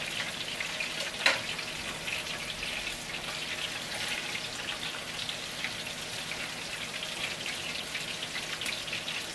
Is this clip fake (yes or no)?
no